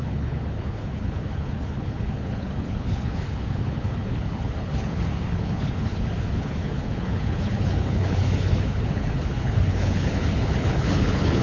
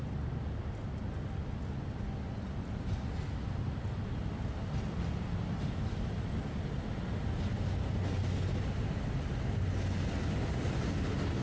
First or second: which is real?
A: second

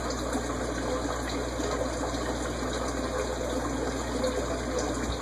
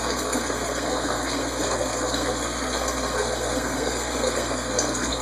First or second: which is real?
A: first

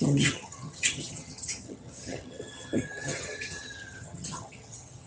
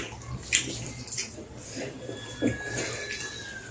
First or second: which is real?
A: second